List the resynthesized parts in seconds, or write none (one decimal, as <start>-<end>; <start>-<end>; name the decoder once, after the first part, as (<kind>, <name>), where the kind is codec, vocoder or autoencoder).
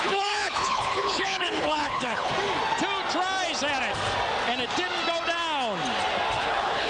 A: 0.0-2.3 (codec, HILCodec); 6.4-6.9